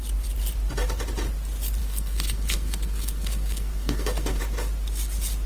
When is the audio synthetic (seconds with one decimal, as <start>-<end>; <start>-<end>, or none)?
1.8-4.4